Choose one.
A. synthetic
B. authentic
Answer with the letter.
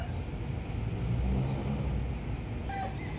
B